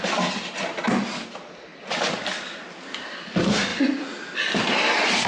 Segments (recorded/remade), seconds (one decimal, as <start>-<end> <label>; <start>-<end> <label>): 0.0-1.7 recorded; 1.7-2.6 remade; 2.6-3.7 recorded; 3.7-5.3 remade